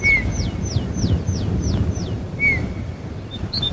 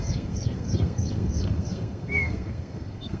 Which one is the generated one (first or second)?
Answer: second